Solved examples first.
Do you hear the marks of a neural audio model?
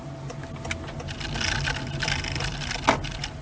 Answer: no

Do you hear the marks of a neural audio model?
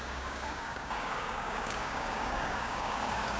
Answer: yes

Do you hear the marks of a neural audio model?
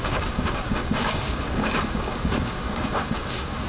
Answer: yes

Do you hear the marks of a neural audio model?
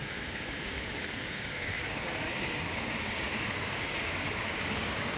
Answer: yes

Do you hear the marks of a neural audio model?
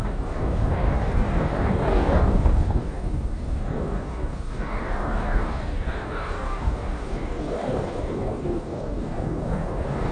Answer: yes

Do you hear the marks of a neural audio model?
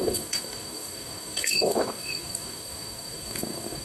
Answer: yes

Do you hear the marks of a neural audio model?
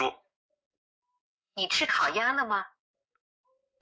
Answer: yes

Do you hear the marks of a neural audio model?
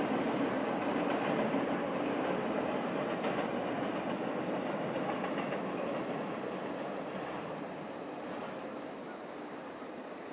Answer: no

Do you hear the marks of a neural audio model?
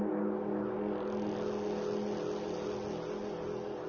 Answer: no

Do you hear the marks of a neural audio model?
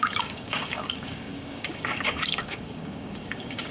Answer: yes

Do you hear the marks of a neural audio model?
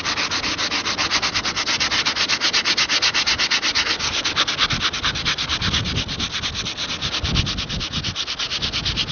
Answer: no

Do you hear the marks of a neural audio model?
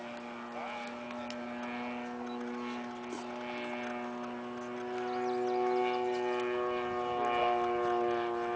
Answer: no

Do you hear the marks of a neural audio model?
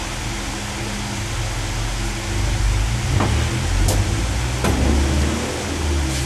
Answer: no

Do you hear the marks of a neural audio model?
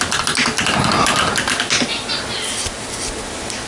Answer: no